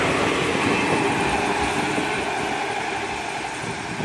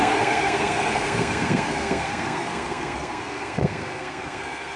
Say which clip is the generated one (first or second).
second